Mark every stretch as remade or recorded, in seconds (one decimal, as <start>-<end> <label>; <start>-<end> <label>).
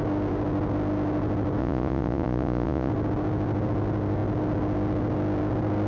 0.0-1.6 recorded; 1.6-2.9 remade; 2.9-5.9 recorded